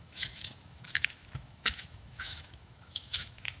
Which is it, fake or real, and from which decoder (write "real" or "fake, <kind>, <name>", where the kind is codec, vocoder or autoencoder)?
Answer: fake, autoencoder, DAC-VAE